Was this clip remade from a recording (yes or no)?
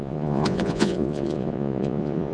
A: yes